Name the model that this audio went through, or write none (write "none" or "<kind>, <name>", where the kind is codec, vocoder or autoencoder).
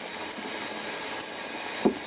none